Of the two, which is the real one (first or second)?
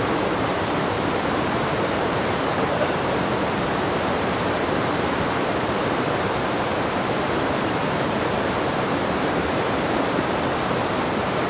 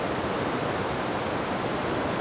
second